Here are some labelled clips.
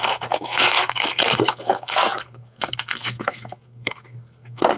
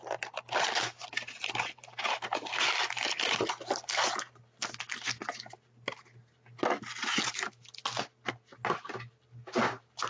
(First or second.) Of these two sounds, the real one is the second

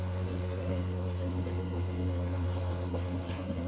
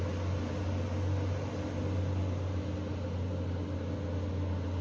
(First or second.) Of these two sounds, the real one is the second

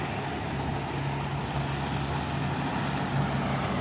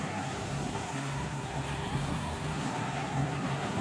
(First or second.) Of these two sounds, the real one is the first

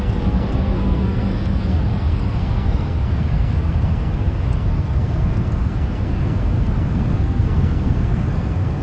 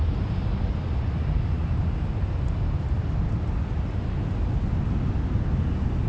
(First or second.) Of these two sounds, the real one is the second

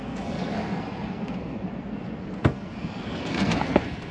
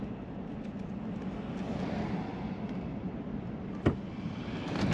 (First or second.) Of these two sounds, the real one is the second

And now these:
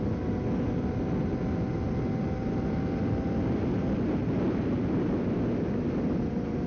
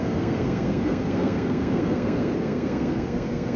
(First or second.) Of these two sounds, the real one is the first